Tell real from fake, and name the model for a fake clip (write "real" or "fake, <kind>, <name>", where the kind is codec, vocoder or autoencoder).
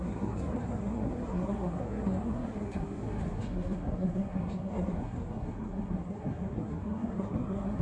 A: fake, codec, SNAC